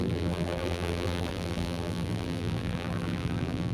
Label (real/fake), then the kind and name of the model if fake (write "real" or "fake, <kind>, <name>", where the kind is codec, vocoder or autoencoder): fake, vocoder, BigVGAN v2